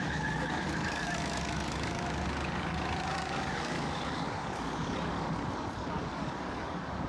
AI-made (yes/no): yes